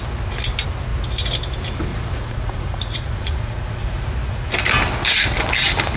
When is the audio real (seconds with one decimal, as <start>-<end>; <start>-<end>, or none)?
0.0-1.9; 4.1-6.0